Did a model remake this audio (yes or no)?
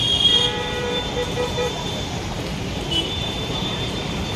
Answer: yes